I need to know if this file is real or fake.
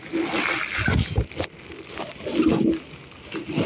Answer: real